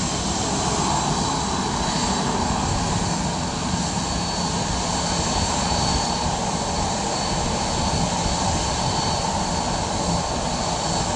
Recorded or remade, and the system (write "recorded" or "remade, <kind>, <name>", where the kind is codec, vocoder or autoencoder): recorded